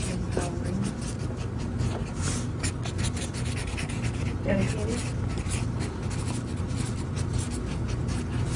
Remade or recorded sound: recorded